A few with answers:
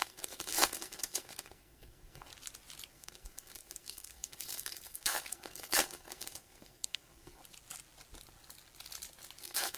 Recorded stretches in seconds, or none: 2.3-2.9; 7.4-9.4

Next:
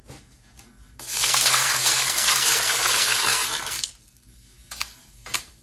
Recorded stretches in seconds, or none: none

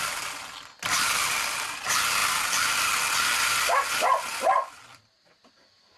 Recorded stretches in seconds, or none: 0.0-6.0

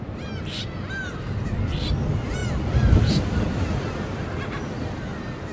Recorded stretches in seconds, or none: 0.0-5.5

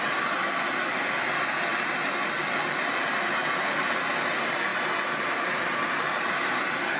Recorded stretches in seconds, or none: 0.0-7.0